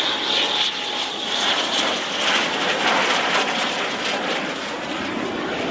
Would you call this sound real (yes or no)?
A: yes